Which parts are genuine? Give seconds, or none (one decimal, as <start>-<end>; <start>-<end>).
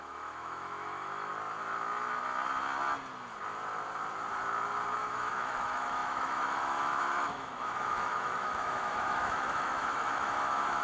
1.3-5.0